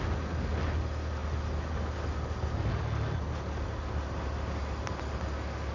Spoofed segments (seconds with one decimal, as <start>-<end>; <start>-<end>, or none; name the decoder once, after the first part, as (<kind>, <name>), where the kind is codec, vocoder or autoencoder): none